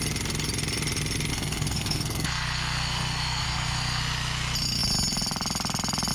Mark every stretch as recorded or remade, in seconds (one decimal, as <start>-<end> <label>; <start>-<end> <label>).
0.0-1.3 recorded; 1.3-4.0 remade; 4.0-6.1 recorded